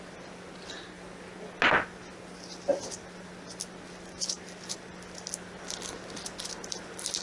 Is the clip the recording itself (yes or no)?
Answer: yes